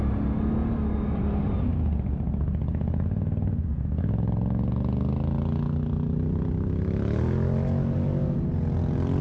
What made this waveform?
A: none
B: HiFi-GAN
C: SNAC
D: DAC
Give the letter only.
A